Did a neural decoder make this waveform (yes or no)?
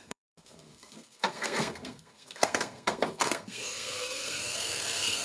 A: yes